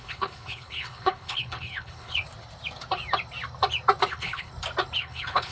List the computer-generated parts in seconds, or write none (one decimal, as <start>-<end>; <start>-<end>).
0.0-2.2; 4.1-4.5; 5.0-5.5